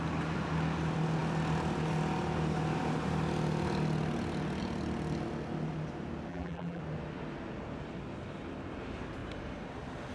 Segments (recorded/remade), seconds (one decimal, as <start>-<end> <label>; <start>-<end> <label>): 0.0-6.3 recorded; 6.3-6.8 remade; 6.8-10.1 recorded